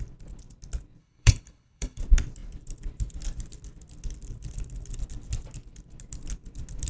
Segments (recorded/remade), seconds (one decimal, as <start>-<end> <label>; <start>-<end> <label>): 0.0-1.0 recorded; 1.0-2.0 remade; 2.0-6.9 recorded